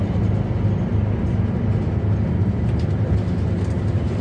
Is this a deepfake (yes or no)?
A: no